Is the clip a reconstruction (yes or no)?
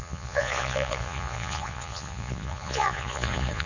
yes